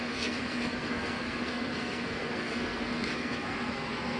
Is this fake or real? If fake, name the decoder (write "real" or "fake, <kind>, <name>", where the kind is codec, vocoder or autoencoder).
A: fake, codec, SNAC